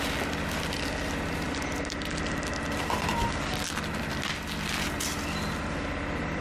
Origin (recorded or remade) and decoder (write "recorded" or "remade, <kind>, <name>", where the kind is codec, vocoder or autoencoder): recorded